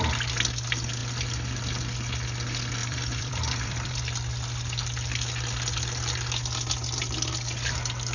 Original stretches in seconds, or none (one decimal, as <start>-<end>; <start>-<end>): 0.0-2.8; 4.0-8.1